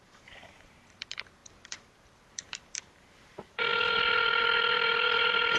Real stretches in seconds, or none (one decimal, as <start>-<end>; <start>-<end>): none

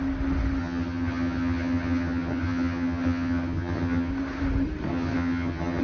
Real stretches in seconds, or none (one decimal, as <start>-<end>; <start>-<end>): 0.0-0.6; 4.1-4.9

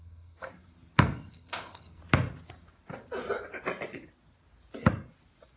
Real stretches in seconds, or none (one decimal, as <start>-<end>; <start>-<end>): 0.5-1.0; 2.0-5.6

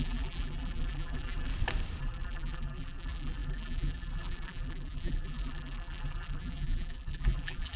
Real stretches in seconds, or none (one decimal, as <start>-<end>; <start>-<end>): 1.5-2.0

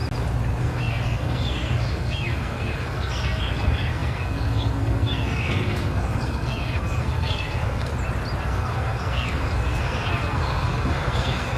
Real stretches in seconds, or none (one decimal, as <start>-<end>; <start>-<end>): 0.0-0.6; 7.9-8.4

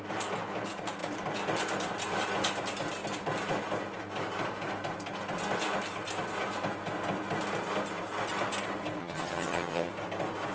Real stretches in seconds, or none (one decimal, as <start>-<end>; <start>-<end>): 0.0-9.0; 9.9-10.5

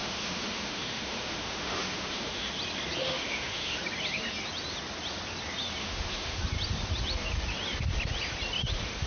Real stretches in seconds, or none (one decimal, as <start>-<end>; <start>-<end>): 2.5-3.0; 3.8-5.8; 6.4-9.1